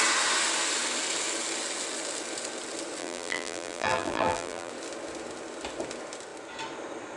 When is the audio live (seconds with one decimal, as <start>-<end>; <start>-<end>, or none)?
0.0-3.0; 4.7-7.2